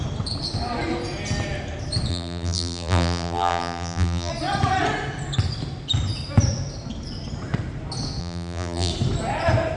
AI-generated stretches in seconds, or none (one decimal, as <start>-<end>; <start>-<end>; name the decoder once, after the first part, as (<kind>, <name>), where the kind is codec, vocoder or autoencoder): 2.1-4.3 (vocoder, BigVGAN v2); 8.2-8.9